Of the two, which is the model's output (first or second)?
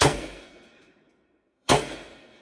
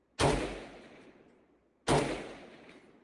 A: first